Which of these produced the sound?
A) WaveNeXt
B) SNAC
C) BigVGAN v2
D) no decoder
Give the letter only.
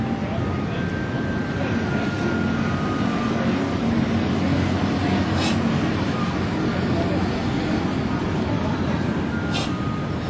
D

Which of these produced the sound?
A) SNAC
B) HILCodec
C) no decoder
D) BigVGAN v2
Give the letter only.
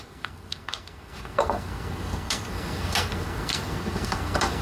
A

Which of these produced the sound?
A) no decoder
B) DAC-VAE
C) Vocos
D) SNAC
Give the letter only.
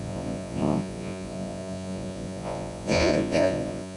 C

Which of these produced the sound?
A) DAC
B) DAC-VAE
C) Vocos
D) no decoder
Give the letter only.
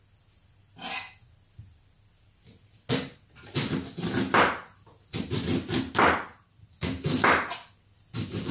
D